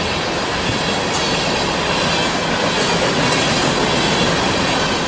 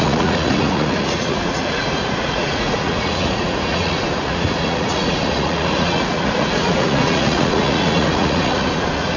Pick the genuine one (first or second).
first